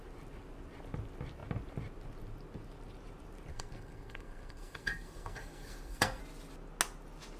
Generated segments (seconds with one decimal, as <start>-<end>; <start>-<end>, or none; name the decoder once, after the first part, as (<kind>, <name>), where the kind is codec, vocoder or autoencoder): 3.5-6.2 (codec, SNAC)

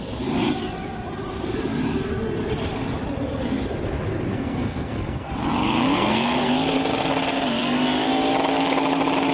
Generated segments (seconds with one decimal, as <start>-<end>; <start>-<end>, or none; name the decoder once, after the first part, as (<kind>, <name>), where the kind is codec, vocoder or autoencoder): 4.3-5.3 (codec, SNAC); 5.8-6.5

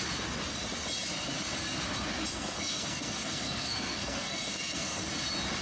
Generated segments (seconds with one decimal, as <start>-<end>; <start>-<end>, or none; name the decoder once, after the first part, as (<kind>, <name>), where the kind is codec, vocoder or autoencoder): 2.3-5.1 (codec, SNAC)

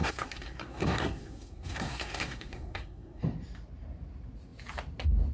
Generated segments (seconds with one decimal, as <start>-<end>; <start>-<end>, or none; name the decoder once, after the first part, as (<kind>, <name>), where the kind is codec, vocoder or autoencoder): 0.0-3.2 (codec, SNAC)

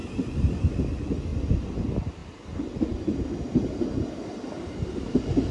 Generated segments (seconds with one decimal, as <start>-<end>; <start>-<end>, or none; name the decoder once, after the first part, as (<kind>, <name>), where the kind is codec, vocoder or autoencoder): none